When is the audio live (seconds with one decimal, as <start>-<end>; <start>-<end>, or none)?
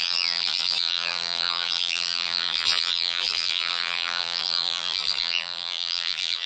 none